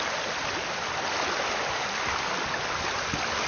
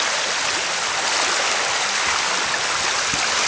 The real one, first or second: second